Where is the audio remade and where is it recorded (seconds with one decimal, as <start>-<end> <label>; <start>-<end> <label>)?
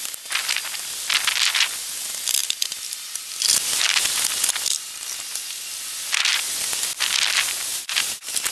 0.0-7.7 recorded; 7.7-8.5 remade